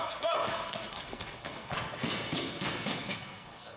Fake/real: fake